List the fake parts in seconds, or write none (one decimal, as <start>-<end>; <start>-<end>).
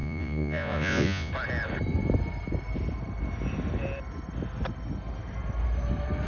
0.0-1.3